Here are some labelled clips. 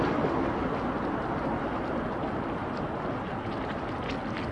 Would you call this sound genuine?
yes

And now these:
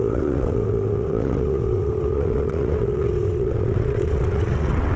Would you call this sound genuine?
no